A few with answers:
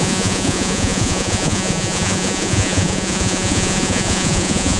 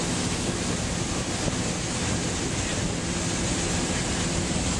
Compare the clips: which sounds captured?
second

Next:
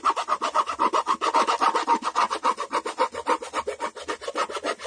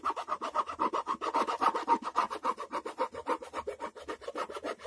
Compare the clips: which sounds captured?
first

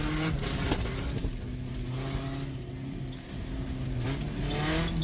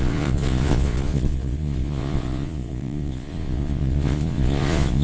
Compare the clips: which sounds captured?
first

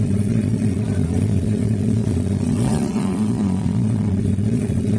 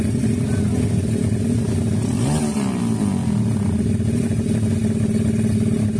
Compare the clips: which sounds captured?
second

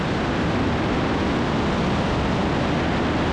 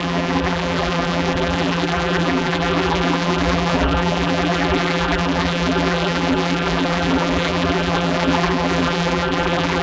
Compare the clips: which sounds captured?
first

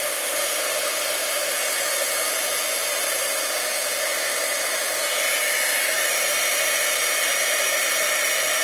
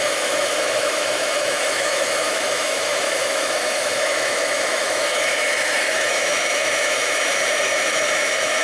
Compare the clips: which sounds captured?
first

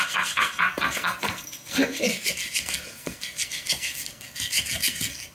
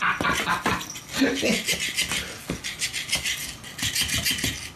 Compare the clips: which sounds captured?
second